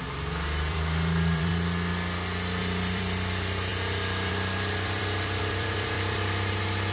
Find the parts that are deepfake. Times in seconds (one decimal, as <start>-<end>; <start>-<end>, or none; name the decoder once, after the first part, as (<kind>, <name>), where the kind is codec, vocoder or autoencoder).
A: 0.0-1.5 (vocoder, BigVGAN v2); 2.6-3.7; 4.3-6.9